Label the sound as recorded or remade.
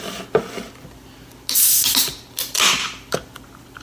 recorded